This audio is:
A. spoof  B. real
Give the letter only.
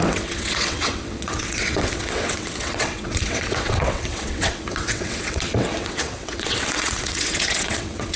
A